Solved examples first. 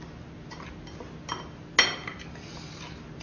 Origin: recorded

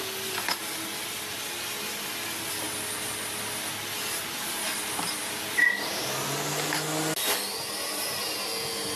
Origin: recorded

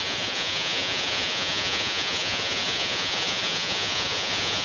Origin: remade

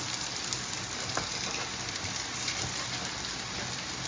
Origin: recorded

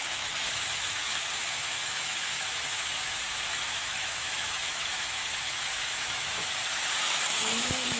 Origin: remade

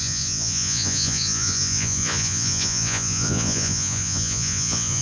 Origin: remade